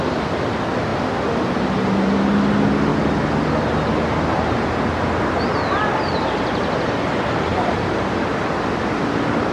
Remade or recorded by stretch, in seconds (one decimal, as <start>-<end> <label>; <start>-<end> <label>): 0.0-2.9 remade; 2.9-3.9 recorded; 3.9-9.5 remade